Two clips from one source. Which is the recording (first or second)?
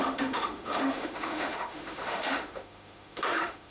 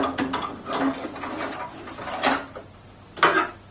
second